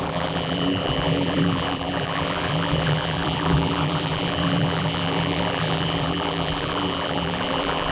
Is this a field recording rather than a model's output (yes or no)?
no